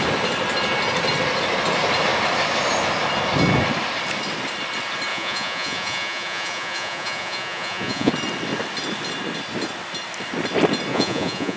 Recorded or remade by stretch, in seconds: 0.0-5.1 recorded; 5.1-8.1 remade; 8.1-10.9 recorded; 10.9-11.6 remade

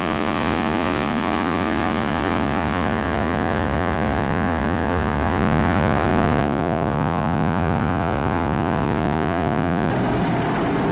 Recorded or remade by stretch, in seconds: 0.0-9.9 remade; 9.9-10.9 recorded

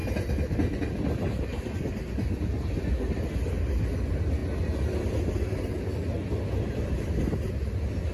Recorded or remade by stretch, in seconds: 0.0-8.1 recorded

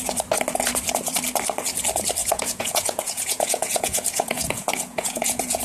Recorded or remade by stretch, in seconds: 0.0-2.2 recorded; 2.2-5.6 remade

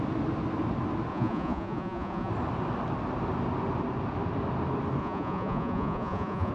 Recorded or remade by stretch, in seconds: 0.0-1.1 recorded; 1.1-2.3 remade; 2.3-5.0 recorded; 5.0-6.5 remade

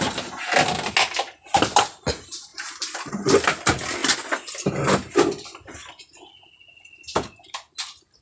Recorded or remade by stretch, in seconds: 0.0-8.2 recorded